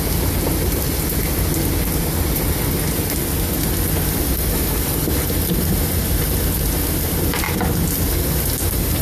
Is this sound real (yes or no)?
yes